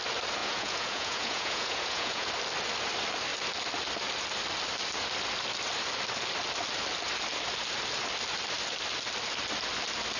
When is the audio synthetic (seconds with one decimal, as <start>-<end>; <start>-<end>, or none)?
0.4-2.3